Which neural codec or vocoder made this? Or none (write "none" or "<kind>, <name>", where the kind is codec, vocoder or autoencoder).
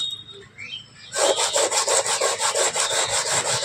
none